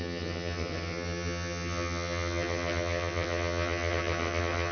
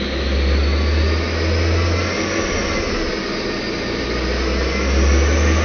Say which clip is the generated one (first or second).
first